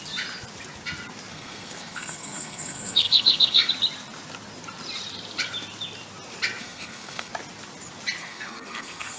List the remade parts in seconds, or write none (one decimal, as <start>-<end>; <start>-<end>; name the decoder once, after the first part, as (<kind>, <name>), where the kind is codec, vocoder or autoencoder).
1.3-3.7 (codec, SNAC); 6.6-7.3; 8.2-9.2